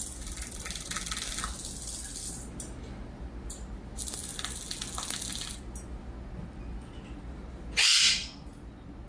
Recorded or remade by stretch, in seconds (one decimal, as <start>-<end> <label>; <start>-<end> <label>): 0.0-7.8 recorded; 7.8-8.5 remade; 8.5-9.1 recorded